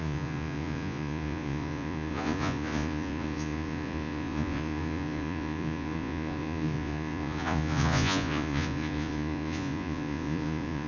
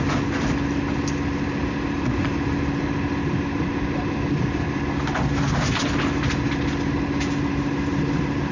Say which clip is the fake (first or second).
first